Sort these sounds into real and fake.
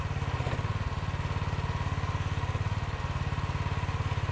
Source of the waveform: real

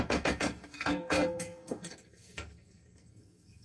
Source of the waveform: fake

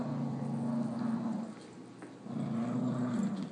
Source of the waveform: real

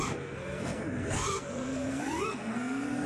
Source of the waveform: fake